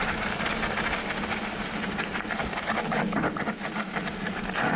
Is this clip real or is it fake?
real